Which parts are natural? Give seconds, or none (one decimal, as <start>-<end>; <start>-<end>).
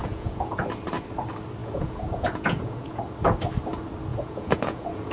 0.6-1.6; 3.0-4.1